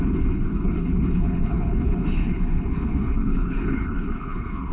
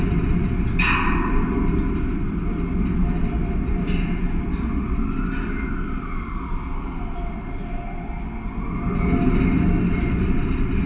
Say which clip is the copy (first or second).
first